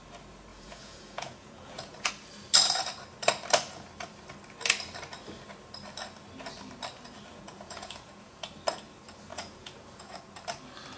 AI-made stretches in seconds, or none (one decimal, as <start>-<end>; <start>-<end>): 0.5-2.1; 7.3-8.5; 9.3-10.2